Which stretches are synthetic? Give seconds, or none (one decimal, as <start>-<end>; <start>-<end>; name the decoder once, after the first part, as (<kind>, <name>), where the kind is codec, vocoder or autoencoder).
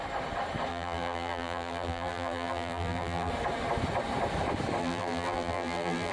0.7-3.3 (vocoder, BigVGAN v2); 4.8-6.1